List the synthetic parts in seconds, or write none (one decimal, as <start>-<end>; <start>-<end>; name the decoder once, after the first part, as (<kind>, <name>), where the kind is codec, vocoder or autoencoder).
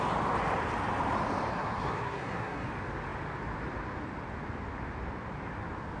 1.5-2.7 (codec, SNAC)